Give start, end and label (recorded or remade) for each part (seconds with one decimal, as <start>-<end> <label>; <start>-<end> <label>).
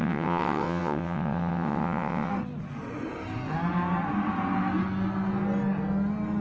0.0-2.3 remade; 2.3-6.4 recorded